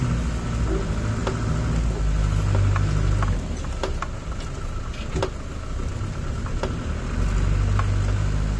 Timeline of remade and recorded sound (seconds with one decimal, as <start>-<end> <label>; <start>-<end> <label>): 0.0-8.6 recorded